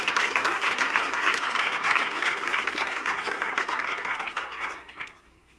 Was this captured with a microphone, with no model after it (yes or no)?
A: no